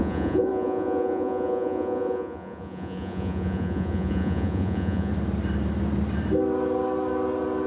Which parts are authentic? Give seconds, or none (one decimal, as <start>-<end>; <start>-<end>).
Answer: 5.1-7.7